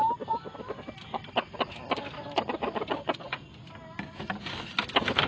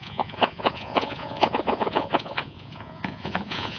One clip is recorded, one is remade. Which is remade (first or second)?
second